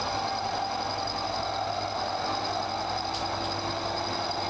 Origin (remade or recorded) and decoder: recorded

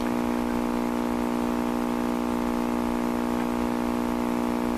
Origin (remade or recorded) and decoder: recorded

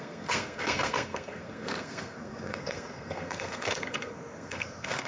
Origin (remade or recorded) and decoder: remade, codec, SNAC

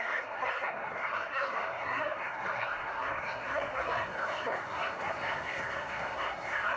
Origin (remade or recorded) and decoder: remade, codec, SNAC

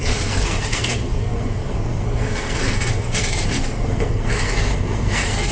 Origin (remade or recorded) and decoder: remade, codec, SNAC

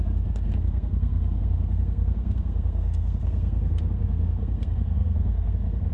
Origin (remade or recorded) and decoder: remade, codec, SNAC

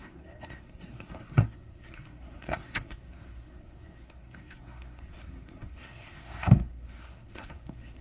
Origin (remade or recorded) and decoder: remade, codec, SNAC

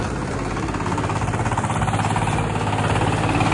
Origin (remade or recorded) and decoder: recorded